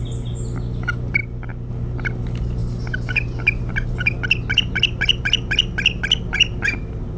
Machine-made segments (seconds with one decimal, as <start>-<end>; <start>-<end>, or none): none